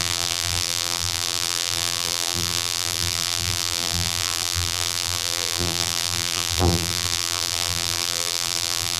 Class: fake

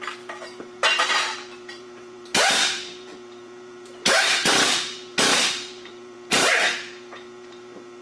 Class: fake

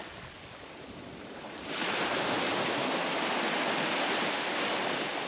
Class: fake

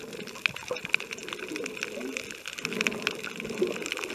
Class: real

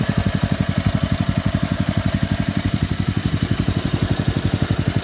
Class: fake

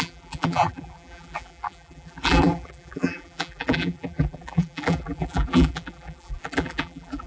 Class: fake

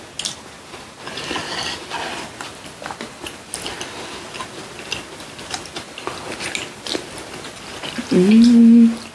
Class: real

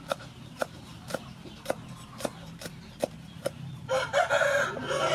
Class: fake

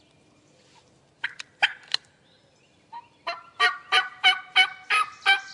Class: fake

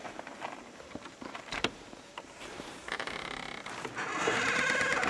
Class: fake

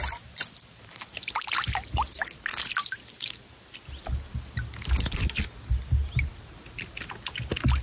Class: real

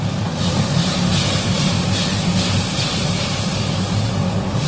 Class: fake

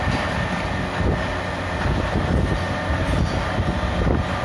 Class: real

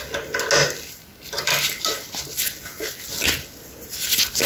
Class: real